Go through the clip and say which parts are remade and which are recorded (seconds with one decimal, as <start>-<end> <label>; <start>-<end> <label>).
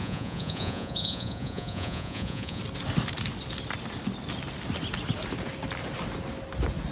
0.0-2.6 remade; 2.6-6.9 recorded